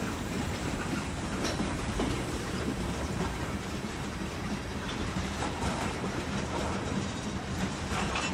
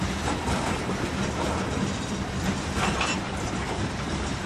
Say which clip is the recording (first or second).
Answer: second